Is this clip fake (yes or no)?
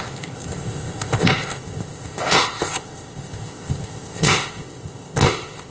yes